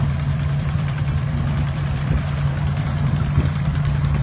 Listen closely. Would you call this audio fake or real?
fake